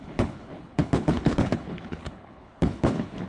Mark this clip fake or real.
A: fake